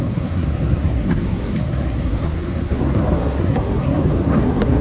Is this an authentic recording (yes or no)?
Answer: no